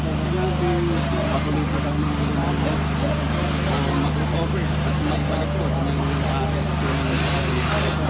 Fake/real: real